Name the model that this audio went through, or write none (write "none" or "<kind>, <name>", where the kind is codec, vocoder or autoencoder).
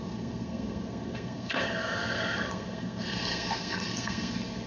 codec, SNAC